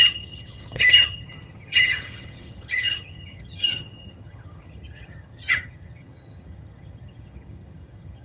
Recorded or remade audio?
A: remade